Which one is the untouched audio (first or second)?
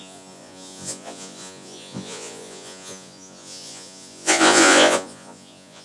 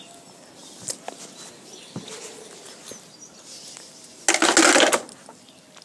second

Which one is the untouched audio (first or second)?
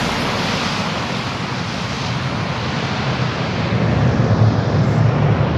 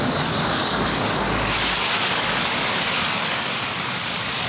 first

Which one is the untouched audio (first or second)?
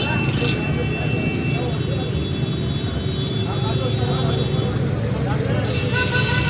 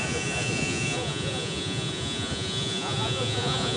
first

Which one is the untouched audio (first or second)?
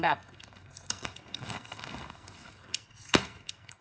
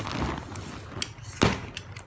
second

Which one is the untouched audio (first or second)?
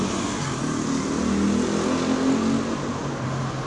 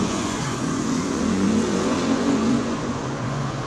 first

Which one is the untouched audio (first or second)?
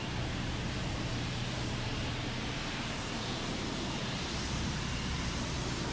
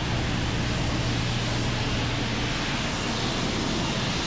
second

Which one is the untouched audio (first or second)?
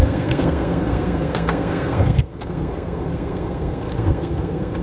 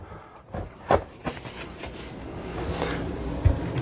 second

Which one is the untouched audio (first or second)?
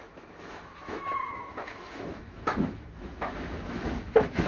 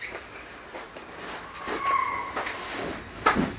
second